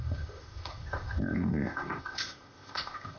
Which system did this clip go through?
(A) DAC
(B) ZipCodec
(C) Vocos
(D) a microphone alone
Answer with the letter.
B